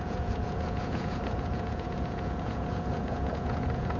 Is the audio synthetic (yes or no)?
yes